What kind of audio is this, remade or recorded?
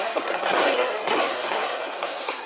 remade